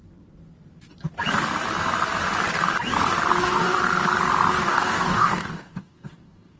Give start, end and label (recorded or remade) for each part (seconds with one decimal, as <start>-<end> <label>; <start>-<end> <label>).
0.0-3.4 recorded; 3.4-3.8 remade; 3.8-4.5 recorded; 4.5-6.6 remade